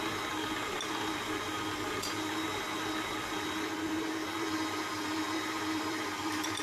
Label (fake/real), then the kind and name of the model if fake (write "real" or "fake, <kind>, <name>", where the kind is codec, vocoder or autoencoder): fake, vocoder, BigVGAN v2